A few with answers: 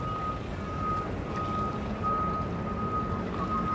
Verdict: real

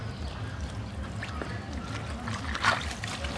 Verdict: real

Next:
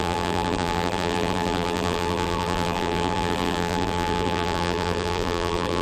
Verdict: fake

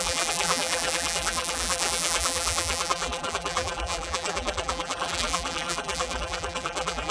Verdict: fake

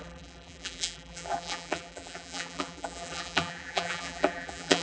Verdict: fake